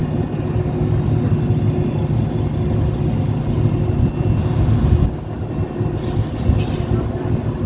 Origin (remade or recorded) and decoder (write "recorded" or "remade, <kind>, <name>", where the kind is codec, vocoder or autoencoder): recorded